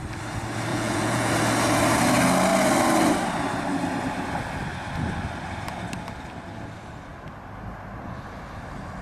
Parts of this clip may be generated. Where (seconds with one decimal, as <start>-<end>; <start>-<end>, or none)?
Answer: 0.7-1.3